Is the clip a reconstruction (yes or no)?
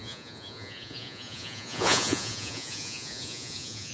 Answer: yes